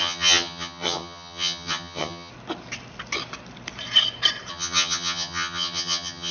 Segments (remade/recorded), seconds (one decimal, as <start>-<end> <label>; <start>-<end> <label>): 0.0-2.3 remade; 2.3-4.5 recorded; 4.5-6.3 remade